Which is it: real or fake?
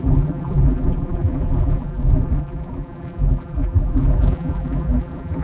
fake